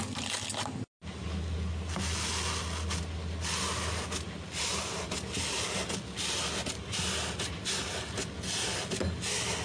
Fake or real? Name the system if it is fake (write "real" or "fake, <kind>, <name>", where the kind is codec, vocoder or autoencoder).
real